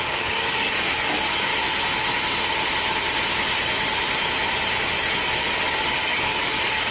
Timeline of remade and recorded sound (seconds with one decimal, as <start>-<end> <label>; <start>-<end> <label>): 0.0-1.5 remade; 1.5-5.6 recorded; 5.6-6.9 remade